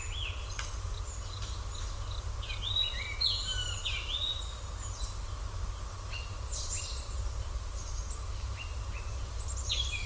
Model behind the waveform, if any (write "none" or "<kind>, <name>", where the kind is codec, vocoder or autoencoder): none